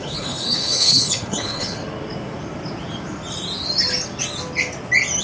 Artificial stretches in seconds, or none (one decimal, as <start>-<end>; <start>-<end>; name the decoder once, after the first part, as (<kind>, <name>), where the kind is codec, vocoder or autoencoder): 0.0-1.8 (codec, HILCodec)